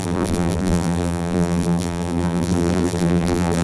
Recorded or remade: remade